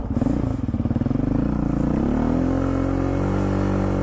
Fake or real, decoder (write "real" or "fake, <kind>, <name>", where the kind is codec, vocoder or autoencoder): real